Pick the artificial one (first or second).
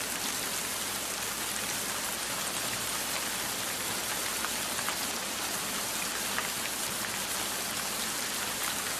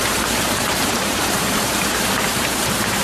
second